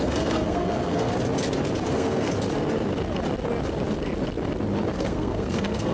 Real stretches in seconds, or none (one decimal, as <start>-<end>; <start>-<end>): 1.1-1.9; 2.3-4.9